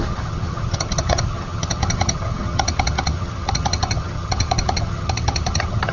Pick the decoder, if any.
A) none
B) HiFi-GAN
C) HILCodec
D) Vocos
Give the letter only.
B